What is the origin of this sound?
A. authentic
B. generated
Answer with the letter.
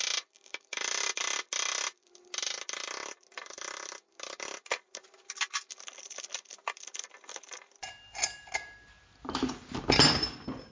A